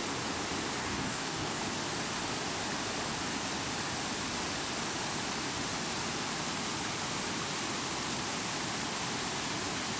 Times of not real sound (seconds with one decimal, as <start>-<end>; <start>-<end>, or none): 0.8-1.6